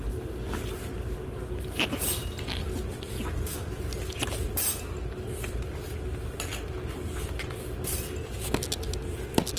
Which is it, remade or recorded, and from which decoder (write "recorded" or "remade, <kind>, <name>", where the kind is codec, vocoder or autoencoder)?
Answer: recorded